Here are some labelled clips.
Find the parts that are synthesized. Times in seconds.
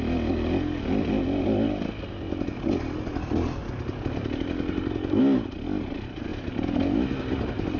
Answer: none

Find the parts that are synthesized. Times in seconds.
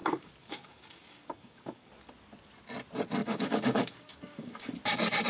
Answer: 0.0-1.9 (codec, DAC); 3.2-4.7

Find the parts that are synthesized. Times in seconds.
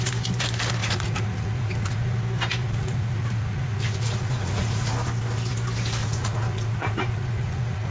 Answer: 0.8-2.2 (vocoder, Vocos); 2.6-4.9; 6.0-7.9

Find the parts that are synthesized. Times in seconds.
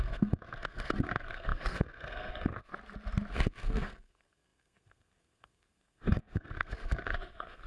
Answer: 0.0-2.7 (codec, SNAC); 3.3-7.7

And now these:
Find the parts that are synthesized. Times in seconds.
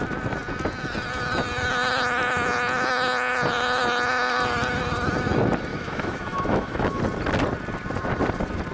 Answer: 5.7-7.0 (autoencoder, DAC-VAE)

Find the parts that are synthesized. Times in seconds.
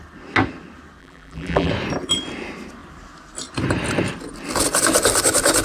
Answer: 1.0-1.7 (vocoder, BigVGAN v2)